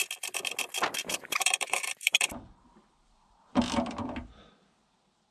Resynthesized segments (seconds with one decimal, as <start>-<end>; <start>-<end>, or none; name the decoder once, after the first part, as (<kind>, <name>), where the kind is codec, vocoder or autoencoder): 1.0-3.6 (vocoder, BigVGAN v2)